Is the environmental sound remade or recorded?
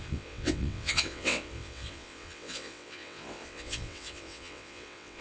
remade